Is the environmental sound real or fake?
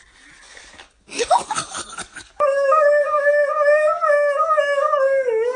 fake